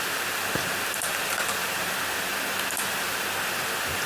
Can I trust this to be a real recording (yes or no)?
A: yes